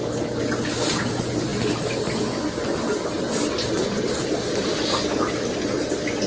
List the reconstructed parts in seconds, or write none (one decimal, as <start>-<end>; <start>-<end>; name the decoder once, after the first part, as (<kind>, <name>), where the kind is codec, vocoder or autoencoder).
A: none